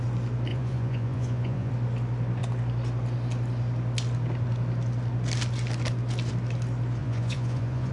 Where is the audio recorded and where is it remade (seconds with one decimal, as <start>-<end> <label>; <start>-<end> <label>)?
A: 0.0-0.5 recorded; 0.5-1.7 remade; 1.7-7.0 recorded; 7.0-7.9 remade